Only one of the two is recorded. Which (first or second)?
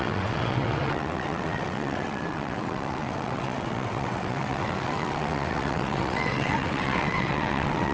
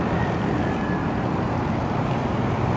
second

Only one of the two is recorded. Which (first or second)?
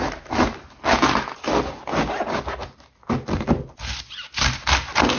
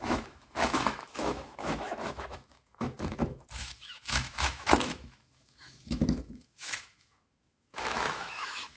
first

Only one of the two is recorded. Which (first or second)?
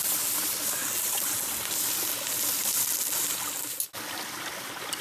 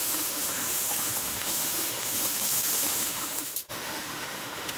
first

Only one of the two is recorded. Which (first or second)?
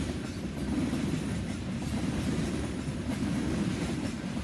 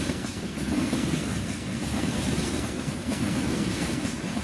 first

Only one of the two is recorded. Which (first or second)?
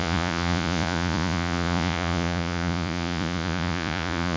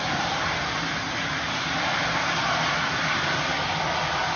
second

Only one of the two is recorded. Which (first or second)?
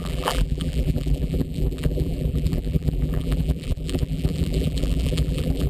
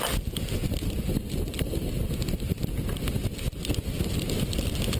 second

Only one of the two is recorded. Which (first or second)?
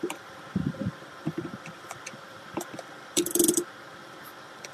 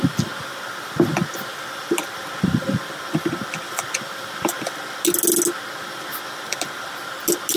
second